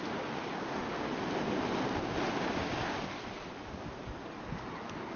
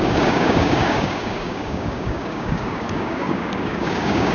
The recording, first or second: first